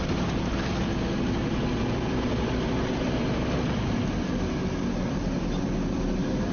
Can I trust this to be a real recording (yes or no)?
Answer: yes